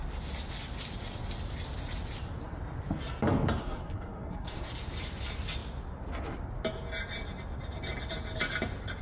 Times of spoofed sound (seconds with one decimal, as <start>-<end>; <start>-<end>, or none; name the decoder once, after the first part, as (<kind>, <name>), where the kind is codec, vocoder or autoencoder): 3.6-4.7 (codec, SNAC)